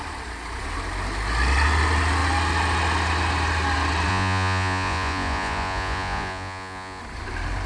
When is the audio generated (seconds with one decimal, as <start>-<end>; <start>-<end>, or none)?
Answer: 4.1-7.0